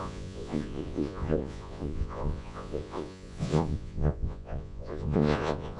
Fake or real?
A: fake